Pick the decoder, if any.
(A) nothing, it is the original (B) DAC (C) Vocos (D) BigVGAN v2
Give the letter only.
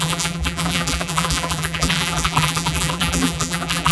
D